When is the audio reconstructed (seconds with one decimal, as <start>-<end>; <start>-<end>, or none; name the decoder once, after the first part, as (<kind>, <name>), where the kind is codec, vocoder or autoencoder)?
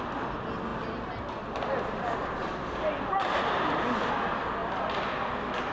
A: none